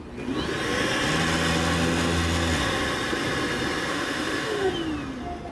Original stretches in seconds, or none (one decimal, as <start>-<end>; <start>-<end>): 0.0-3.9; 4.7-5.5